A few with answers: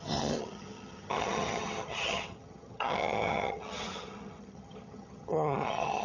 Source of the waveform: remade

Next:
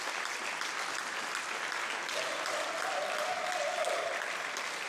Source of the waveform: recorded